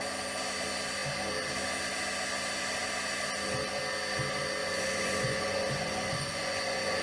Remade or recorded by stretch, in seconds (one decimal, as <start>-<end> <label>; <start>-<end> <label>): 0.0-4.6 recorded; 4.6-7.0 remade